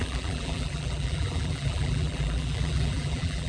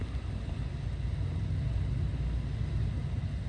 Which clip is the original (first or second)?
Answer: second